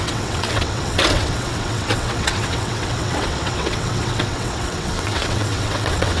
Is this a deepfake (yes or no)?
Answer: yes